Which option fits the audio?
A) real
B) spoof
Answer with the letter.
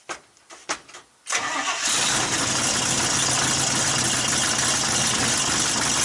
A